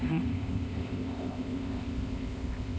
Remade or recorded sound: remade